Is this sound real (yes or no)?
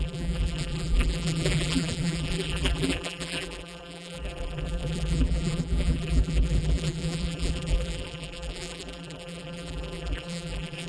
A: no